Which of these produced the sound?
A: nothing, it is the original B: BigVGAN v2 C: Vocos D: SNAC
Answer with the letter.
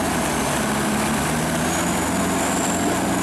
A